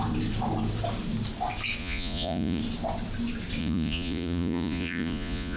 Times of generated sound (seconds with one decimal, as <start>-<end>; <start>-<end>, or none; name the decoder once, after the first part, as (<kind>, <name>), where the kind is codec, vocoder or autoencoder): 1.8-2.6 (vocoder, Vocos); 3.6-5.6